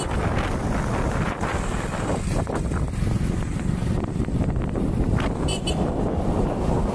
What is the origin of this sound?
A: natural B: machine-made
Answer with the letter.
A